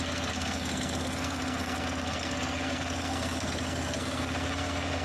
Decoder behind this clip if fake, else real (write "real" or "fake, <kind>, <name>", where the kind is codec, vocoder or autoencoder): fake, codec, SNAC